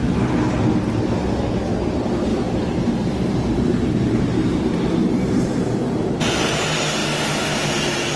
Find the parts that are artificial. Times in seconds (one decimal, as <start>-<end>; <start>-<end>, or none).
2.3-6.2